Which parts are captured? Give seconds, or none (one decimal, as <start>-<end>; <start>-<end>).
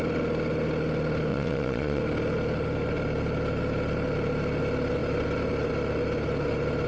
0.0-1.3; 2.0-6.9